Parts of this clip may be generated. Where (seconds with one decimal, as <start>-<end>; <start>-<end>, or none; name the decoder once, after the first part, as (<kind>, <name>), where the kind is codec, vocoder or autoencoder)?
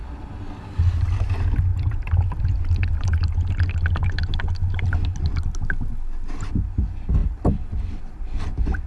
none